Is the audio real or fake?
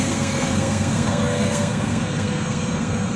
fake